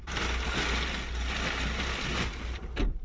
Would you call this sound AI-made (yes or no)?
no